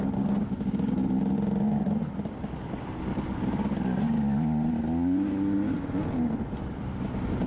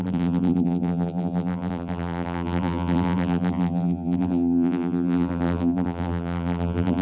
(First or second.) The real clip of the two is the first